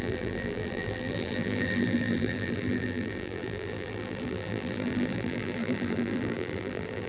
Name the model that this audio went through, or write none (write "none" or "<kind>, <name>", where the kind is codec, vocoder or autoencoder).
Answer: vocoder, BigVGAN v2